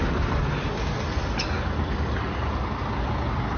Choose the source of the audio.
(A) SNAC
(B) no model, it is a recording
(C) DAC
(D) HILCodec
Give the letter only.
B